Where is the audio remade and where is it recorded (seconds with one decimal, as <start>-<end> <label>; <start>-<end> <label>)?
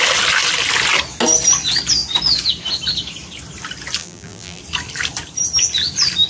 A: 0.0-4.0 recorded; 4.0-4.6 remade; 4.6-6.3 recorded